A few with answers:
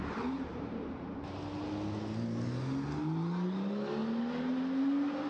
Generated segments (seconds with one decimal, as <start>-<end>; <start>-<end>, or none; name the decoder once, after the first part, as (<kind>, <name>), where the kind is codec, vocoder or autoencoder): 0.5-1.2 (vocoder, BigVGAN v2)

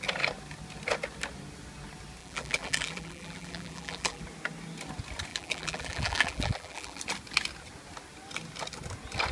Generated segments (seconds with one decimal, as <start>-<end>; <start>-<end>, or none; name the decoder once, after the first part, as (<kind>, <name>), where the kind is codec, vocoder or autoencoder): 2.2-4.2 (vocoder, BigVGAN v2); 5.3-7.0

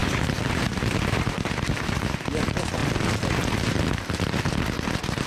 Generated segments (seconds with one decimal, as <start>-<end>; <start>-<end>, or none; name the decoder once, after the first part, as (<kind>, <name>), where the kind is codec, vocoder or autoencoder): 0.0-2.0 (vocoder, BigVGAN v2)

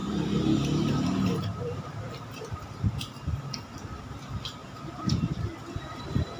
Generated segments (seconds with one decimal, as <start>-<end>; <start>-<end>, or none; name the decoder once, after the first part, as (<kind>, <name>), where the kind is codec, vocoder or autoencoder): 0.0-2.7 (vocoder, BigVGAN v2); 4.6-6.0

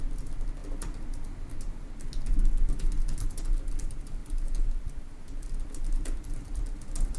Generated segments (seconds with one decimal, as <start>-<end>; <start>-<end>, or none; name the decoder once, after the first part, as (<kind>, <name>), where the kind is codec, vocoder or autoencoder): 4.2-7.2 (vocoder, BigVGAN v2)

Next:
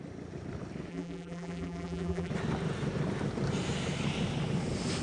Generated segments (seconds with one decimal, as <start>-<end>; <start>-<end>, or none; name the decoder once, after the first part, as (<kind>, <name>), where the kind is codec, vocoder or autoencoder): 0.9-2.3 (vocoder, BigVGAN v2)

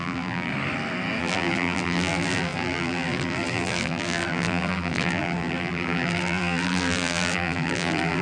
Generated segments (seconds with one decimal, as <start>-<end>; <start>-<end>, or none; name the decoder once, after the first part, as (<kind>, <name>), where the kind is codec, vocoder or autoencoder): 0.0-0.5 (vocoder, BigVGAN v2); 1.2-8.2

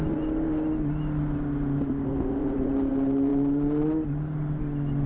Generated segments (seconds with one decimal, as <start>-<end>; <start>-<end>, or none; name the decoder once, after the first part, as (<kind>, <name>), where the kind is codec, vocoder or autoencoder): 2.4-2.9 (vocoder, BigVGAN v2)